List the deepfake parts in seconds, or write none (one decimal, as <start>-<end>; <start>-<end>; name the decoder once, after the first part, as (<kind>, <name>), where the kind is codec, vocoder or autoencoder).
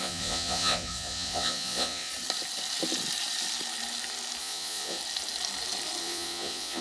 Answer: 0.0-2.1 (vocoder, Vocos); 4.4-5.0; 6.0-6.8